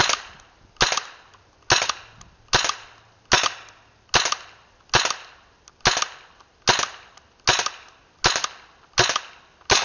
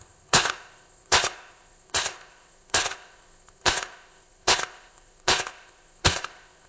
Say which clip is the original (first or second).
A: first